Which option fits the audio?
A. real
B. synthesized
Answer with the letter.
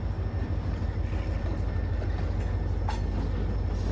A